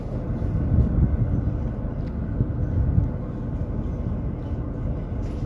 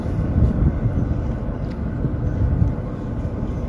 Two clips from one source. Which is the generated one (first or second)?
second